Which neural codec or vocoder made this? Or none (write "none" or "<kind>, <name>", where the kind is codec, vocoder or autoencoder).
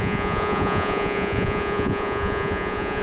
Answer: vocoder, Vocos